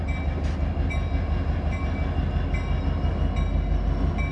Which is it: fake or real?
real